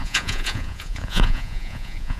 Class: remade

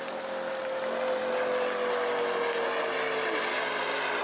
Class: recorded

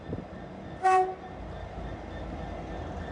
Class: recorded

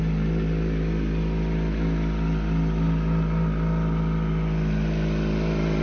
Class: recorded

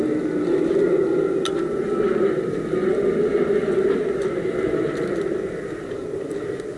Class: recorded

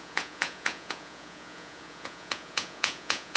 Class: remade